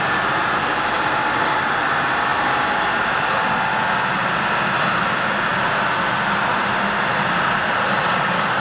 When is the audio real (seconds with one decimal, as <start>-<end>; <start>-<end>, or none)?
0.0-8.6